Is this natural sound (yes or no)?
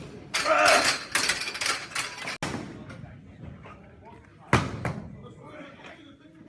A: yes